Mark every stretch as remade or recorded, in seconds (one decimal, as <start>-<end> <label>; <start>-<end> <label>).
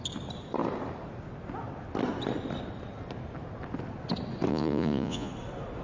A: 0.0-4.5 recorded; 4.5-5.3 remade; 5.3-5.8 recorded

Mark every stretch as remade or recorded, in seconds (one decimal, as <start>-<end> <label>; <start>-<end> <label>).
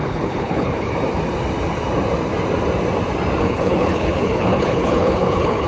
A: 0.0-0.9 remade; 0.9-3.4 recorded; 3.4-5.7 remade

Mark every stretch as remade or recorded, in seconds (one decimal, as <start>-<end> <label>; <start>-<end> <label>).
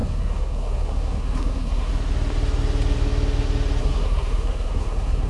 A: 0.0-1.9 remade; 1.9-3.8 recorded; 3.8-5.3 remade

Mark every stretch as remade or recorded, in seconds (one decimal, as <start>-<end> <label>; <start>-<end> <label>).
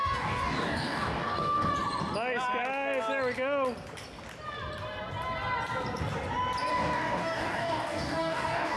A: 0.0-1.7 remade; 1.7-6.7 recorded; 6.7-8.8 remade